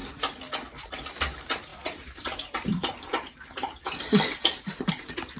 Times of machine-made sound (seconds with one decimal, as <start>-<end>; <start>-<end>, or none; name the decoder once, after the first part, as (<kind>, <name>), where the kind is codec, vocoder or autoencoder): 1.7-4.9 (vocoder, BigVGAN v2)